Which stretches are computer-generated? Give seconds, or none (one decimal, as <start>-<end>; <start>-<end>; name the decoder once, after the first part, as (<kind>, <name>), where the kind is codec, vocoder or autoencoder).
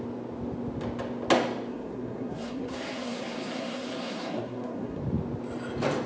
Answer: 1.7-5.0 (codec, SNAC)